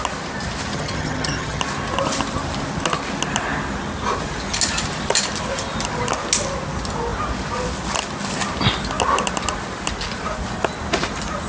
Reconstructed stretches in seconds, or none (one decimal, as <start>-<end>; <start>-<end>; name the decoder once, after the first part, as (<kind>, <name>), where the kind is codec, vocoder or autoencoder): 0.7-1.6 (vocoder, HiFi-GAN)